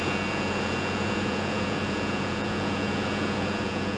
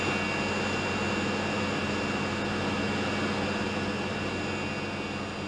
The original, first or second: second